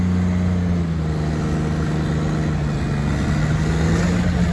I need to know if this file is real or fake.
real